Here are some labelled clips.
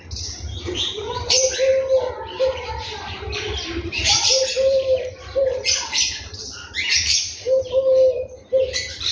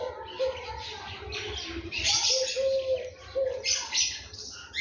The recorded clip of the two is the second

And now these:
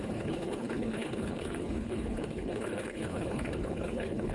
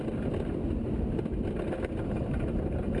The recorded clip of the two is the second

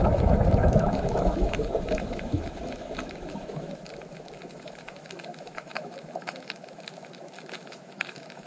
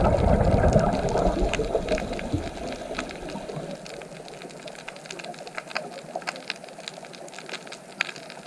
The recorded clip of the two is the second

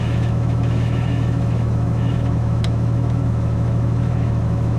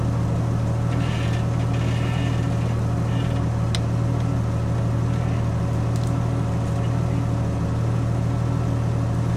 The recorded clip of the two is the second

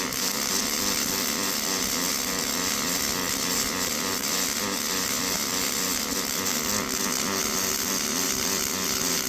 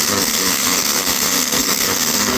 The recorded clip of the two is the first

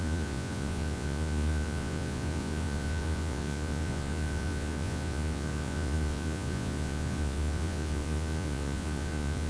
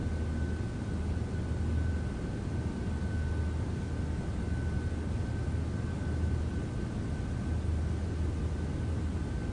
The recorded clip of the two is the second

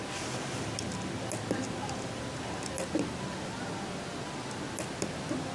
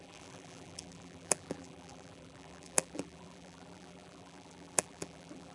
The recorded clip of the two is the first